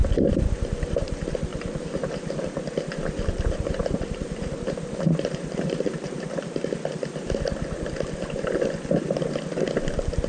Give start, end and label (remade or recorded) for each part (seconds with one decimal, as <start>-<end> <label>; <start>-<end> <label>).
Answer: 0.0-1.5 recorded; 1.5-6.7 remade; 6.7-10.3 recorded